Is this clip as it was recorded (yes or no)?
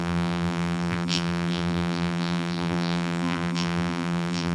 no